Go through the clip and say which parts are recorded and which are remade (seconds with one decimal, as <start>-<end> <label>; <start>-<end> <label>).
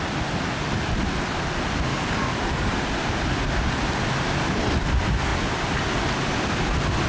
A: 0.0-1.9 recorded; 1.9-2.7 remade; 2.7-7.1 recorded